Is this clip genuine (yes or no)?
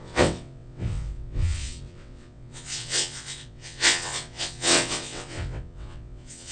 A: no